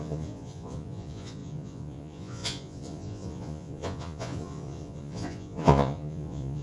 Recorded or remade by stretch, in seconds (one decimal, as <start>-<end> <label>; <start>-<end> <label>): 0.0-6.6 remade